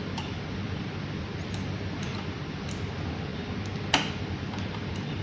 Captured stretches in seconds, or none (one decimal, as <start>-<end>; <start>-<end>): 0.0-5.2